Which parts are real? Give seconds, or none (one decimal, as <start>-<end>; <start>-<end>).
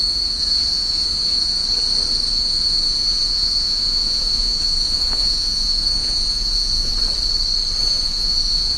1.6-2.3; 6.9-7.8